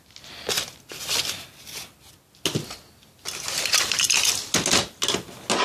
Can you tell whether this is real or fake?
real